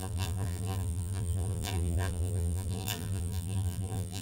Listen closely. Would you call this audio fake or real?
fake